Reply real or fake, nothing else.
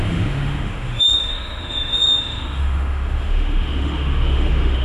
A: fake